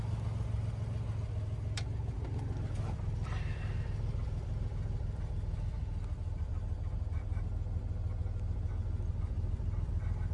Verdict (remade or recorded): recorded